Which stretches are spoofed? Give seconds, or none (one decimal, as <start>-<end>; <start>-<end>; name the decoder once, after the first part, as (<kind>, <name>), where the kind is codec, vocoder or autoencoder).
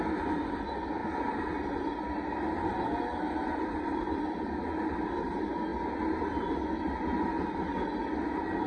2.7-4.0 (vocoder, BigVGAN v2)